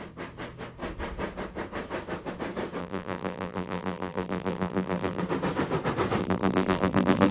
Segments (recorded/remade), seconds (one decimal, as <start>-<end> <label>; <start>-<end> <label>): 0.0-2.8 recorded; 2.8-5.2 remade; 5.2-6.2 recorded; 6.2-7.3 remade